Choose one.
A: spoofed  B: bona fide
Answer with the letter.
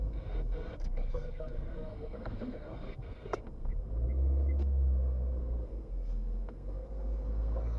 A